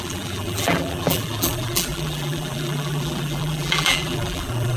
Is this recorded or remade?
remade